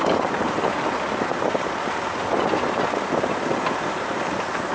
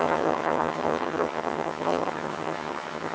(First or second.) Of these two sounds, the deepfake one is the second